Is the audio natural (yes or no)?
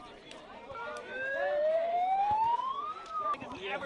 no